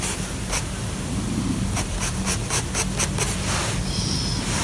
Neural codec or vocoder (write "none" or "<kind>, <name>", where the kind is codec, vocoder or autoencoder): none